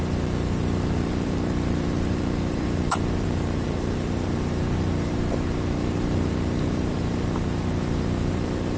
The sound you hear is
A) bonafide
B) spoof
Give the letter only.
B